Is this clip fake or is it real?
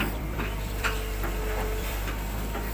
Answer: fake